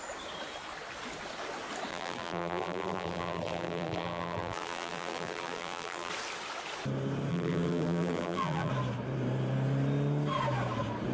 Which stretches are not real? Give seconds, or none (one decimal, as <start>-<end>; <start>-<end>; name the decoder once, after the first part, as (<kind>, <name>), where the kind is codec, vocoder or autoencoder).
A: 1.9-6.1 (vocoder, BigVGAN v2); 7.3-8.7